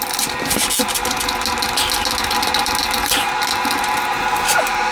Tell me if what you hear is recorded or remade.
recorded